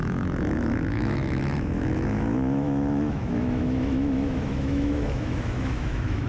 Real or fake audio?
fake